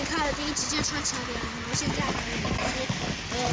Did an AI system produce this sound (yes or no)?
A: no